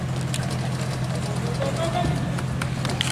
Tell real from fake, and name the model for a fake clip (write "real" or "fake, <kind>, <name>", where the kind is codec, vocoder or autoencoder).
real